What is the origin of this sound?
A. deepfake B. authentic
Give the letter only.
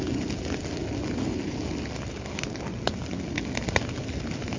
B